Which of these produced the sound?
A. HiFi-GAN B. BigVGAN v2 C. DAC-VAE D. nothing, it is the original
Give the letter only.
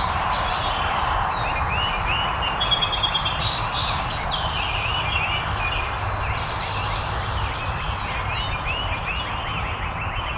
D